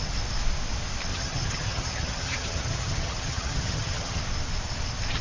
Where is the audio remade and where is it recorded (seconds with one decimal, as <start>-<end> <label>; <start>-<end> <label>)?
0.0-1.1 recorded; 1.1-4.2 remade; 4.2-5.2 recorded